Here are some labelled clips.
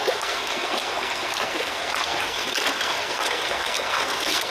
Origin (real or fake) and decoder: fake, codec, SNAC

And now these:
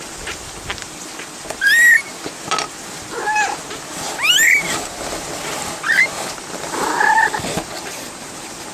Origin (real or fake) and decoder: real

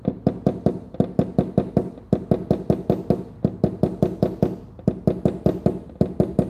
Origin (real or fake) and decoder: real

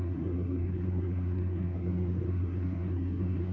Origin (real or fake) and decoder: fake, codec, SNAC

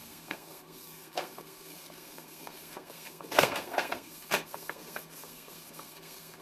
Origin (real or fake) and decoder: fake, codec, SNAC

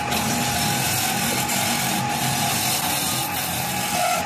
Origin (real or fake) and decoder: real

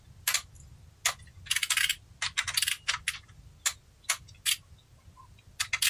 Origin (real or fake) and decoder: real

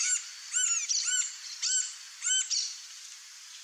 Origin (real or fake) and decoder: real